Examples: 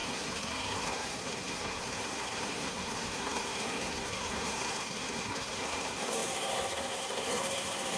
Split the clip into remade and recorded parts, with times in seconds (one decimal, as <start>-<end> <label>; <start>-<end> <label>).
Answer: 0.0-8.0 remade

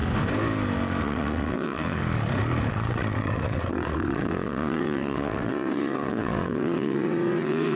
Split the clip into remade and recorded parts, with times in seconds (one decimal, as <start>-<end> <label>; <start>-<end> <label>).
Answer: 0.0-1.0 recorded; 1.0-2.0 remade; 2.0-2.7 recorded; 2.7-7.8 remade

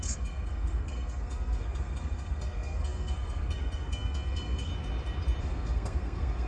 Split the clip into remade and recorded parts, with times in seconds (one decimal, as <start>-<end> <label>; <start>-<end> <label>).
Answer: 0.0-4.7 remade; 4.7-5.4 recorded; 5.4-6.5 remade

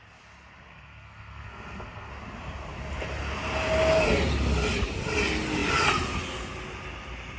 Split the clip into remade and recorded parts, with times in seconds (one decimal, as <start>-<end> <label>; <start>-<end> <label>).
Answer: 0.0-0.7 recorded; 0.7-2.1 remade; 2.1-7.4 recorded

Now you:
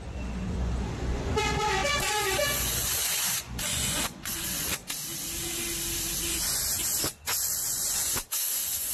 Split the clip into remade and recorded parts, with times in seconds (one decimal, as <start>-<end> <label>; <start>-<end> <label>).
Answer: 0.0-4.8 remade; 4.8-6.3 recorded; 6.3-8.9 remade